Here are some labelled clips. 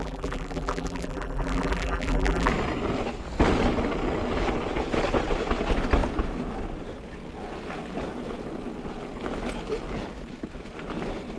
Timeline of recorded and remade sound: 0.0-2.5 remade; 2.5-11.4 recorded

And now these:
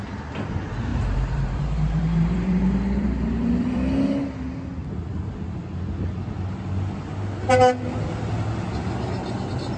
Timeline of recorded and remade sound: 0.0-0.9 recorded; 0.9-3.5 remade; 3.5-9.8 recorded

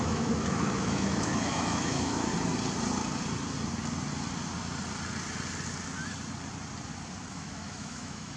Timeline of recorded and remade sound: 0.0-2.3 remade; 2.3-7.3 recorded; 7.3-8.4 remade